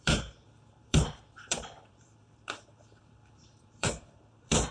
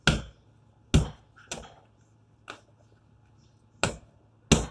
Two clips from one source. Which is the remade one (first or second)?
first